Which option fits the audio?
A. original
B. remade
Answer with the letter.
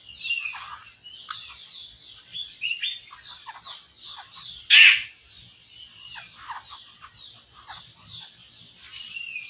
A